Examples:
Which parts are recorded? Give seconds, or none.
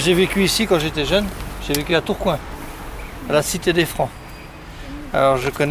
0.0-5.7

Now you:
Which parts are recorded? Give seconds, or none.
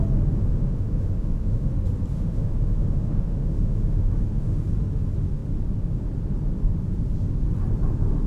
0.0-0.4; 1.7-2.1; 4.6-8.3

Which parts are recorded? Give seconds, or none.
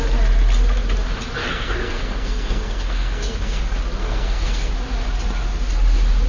0.0-1.4; 3.6-4.0; 4.7-6.3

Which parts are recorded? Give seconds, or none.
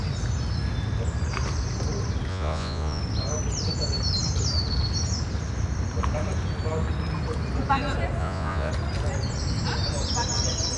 0.0-2.3; 3.0-8.2; 8.7-10.8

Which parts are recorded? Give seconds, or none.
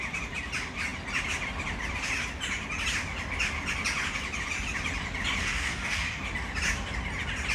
0.0-5.4; 6.2-7.5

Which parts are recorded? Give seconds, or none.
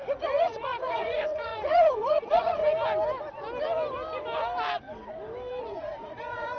2.6-5.6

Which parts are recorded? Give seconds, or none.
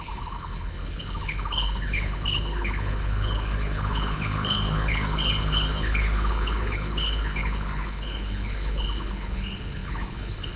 none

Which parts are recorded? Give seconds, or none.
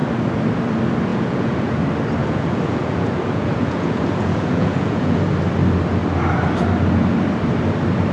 0.0-1.1; 1.8-2.2; 5.2-8.1